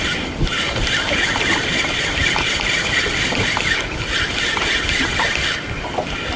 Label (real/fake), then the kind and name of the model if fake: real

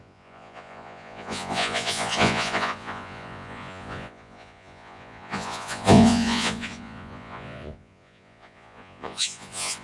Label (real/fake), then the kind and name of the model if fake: fake, vocoder, Vocos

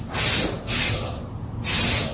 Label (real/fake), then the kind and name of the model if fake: real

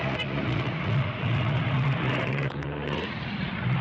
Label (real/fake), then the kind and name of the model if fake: fake, vocoder, Vocos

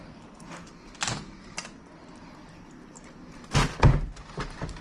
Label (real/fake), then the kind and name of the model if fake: real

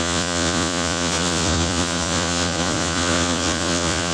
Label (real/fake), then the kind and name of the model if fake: fake, vocoder, Vocos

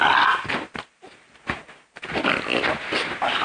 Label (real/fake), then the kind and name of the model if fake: real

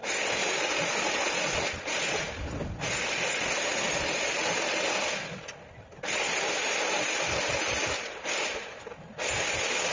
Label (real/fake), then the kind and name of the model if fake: real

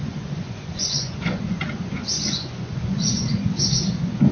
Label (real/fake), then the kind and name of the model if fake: fake, vocoder, Vocos